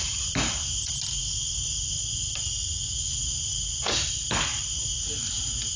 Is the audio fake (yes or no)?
no